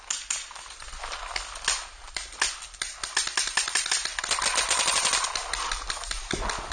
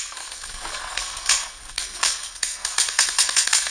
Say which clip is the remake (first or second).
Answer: second